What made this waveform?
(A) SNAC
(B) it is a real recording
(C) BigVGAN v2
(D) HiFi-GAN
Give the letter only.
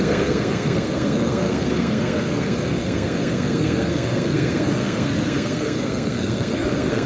A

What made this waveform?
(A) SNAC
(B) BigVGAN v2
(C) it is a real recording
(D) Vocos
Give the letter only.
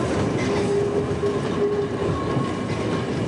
C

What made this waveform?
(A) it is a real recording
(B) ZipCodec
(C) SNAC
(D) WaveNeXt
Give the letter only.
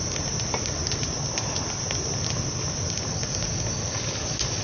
A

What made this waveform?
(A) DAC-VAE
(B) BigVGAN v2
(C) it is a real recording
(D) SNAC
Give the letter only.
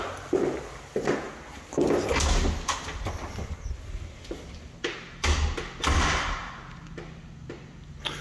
C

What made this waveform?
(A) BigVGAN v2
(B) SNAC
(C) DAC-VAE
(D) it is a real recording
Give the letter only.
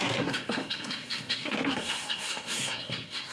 B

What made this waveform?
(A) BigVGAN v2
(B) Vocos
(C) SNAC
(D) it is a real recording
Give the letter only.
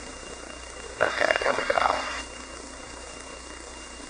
C